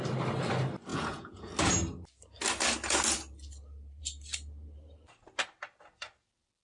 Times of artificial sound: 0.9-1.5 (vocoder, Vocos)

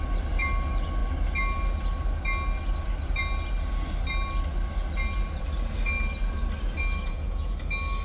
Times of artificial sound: 7.0-7.6 (vocoder, Vocos)

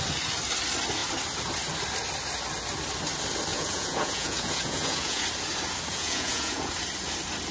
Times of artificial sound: 3.5-5.2 (vocoder, Vocos); 5.9-6.7

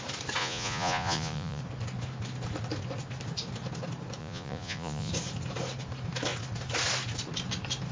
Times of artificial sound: 0.4-1.6 (vocoder, Vocos); 4.2-5.1

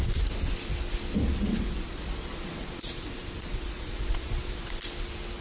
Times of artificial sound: 1.5-4.7 (vocoder, Vocos)

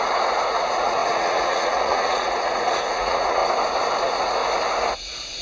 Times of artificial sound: 0.0-3.4 (vocoder, Vocos); 4.0-4.4; 5.0-5.4